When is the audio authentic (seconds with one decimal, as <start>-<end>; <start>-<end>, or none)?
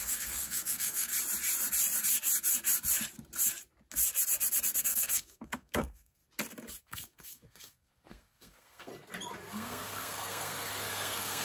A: 1.1-4.8; 6.2-6.8; 8.9-9.5